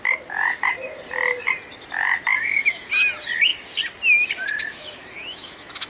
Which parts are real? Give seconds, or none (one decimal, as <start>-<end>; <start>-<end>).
0.0-2.4; 2.9-4.7